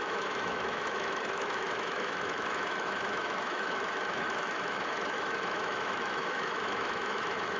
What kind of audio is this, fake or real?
fake